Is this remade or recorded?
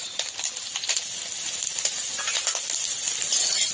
recorded